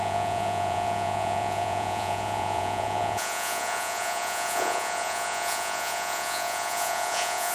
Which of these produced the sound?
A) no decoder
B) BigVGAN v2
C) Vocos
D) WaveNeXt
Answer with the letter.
C